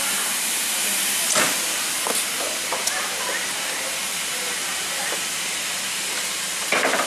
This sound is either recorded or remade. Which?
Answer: recorded